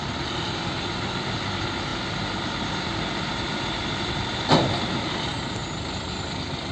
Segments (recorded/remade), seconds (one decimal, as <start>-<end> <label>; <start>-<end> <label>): 0.0-6.7 recorded